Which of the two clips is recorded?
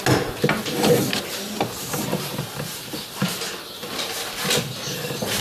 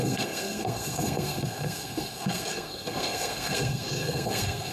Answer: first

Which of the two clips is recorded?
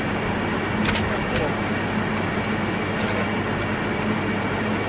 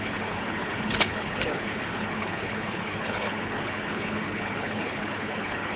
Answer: first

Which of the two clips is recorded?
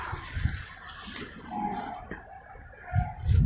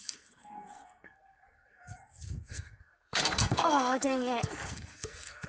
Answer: first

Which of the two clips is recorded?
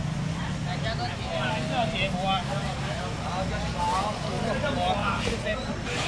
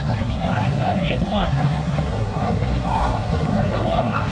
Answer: first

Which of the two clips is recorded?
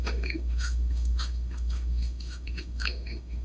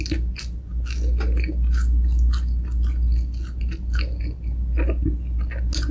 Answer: second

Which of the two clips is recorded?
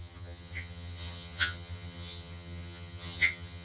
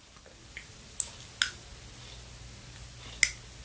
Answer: second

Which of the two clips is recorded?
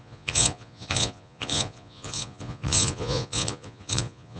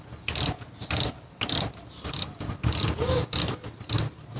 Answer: second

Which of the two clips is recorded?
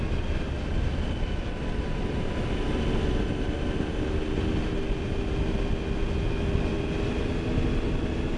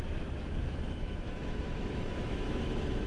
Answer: first